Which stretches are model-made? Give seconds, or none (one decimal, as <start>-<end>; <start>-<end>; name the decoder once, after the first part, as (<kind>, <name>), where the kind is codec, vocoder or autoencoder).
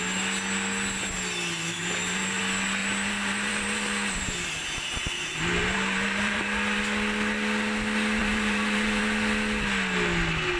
1.8-2.4 (vocoder, BigVGAN v2); 2.8-6.8; 8.2-9.0